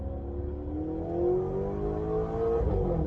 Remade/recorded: recorded